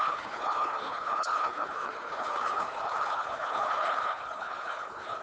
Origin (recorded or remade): remade